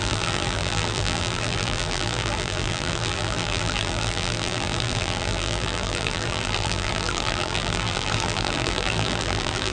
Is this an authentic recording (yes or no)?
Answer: no